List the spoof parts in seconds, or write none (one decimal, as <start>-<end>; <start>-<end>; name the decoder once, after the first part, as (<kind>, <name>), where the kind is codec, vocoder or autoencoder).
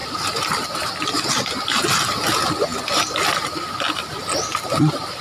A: none